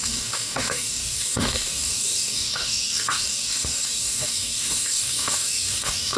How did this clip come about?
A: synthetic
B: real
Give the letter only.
A